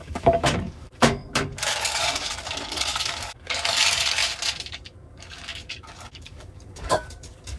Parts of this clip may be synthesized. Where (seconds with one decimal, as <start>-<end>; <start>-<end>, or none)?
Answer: 0.0-4.2; 4.7-7.6